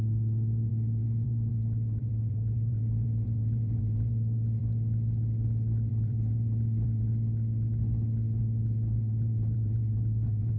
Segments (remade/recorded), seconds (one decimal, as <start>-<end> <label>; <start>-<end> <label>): 0.0-4.6 remade; 4.6-5.9 recorded; 5.9-7.1 remade; 7.1-8.4 recorded; 8.4-10.6 remade